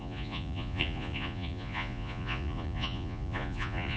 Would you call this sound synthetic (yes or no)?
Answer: yes